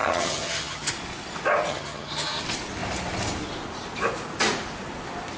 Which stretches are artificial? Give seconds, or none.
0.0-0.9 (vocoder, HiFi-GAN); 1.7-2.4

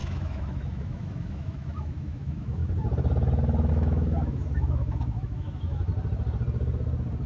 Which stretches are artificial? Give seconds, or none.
0.0-2.6 (autoencoder, DAC-VAE); 3.7-5.9

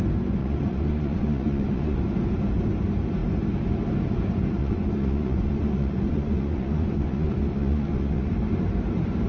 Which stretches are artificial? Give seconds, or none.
0.4-2.0 (vocoder, Vocos); 4.6-8.3

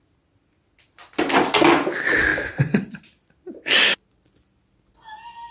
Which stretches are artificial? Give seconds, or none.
none